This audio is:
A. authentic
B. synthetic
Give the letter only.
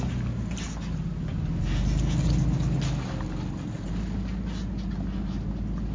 A